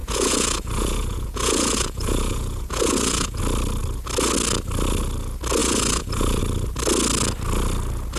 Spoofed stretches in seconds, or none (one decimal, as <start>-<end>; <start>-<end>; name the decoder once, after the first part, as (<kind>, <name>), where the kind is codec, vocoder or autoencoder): 0.0-3.4 (vocoder, Vocos); 5.6-6.4